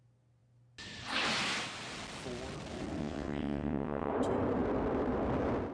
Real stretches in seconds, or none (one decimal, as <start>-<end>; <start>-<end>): 0.0-3.0; 4.1-5.7